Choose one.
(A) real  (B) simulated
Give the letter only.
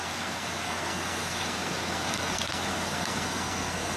B